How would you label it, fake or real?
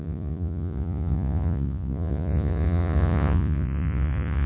fake